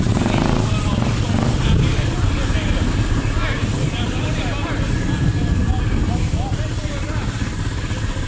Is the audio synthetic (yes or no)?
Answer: no